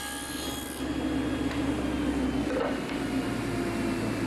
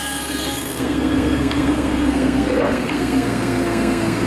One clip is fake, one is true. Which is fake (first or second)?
second